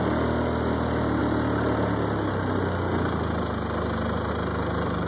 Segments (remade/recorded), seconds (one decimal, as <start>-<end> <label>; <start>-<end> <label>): 0.0-5.1 recorded

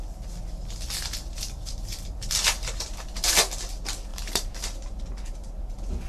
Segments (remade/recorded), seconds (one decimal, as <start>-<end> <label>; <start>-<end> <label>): 0.0-4.1 recorded; 4.1-5.6 remade; 5.6-6.1 recorded

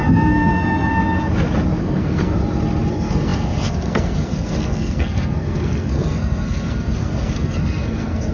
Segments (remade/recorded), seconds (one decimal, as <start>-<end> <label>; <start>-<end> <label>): 0.0-0.9 remade; 0.9-1.8 recorded; 1.8-2.4 remade; 2.4-2.9 recorded; 2.9-8.3 remade

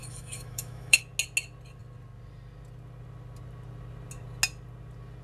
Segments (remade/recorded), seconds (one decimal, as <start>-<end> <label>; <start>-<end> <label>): 0.0-1.0 remade; 1.0-5.2 recorded